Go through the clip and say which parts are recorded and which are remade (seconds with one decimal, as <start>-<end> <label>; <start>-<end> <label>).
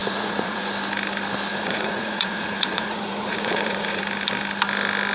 0.0-0.7 remade; 0.7-1.5 recorded; 1.5-4.0 remade; 4.0-5.1 recorded